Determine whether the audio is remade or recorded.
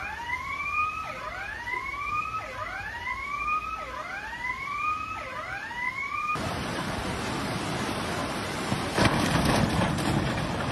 remade